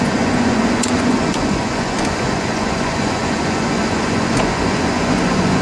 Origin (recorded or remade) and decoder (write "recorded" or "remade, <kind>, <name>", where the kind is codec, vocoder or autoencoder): remade, vocoder, Vocos